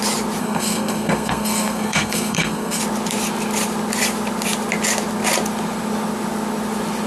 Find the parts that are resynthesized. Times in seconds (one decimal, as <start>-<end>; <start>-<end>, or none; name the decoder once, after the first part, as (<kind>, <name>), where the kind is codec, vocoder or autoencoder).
0.4-2.8 (codec, SNAC)